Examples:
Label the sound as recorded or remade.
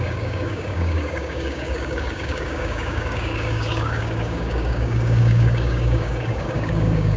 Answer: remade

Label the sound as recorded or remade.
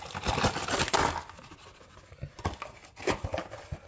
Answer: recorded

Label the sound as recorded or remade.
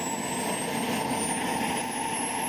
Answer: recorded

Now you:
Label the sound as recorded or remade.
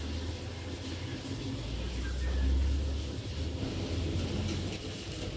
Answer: recorded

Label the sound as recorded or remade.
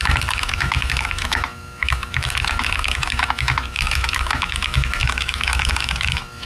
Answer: remade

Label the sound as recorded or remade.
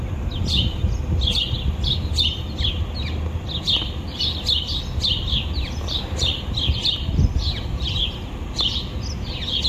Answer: recorded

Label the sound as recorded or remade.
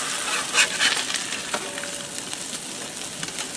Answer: recorded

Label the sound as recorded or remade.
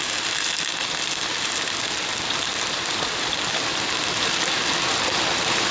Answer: recorded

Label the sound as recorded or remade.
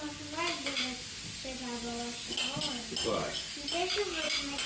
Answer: recorded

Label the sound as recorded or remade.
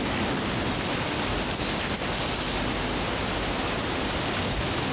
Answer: recorded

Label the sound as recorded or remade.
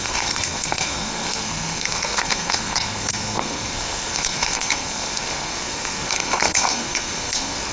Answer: remade